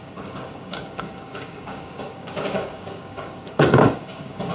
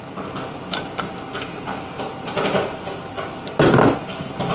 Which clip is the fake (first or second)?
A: first